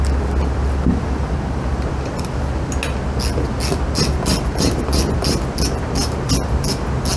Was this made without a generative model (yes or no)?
yes